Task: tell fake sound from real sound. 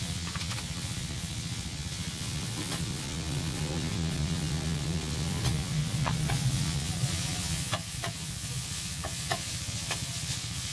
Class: fake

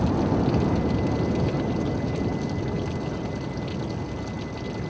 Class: real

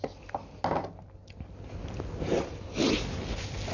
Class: real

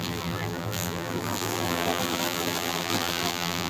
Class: fake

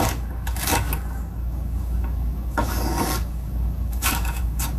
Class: fake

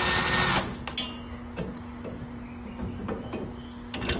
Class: real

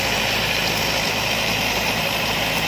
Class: fake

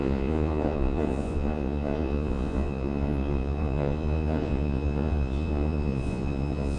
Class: fake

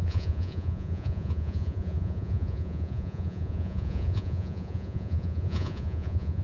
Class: fake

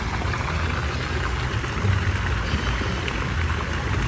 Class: real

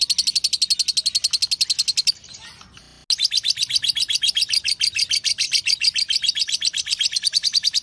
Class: real